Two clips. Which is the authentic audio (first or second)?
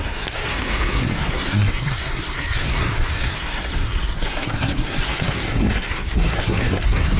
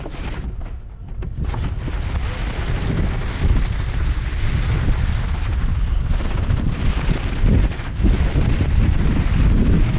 second